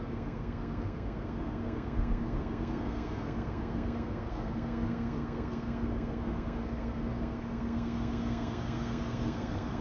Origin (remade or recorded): remade